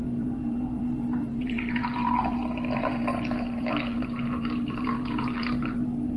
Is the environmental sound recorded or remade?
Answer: remade